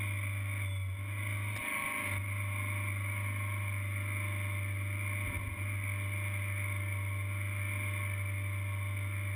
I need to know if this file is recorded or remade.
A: recorded